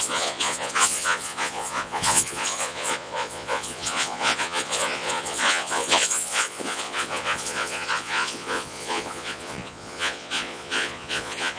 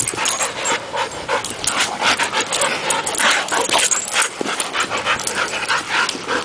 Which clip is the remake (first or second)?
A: first